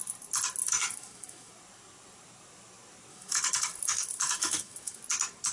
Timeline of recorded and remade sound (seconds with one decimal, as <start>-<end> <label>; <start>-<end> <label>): 0.0-0.6 recorded; 0.6-1.5 remade; 1.5-3.1 recorded; 3.1-5.0 remade; 5.0-5.5 recorded